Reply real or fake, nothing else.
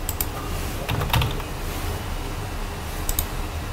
real